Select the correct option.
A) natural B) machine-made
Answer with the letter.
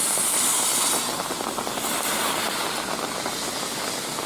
A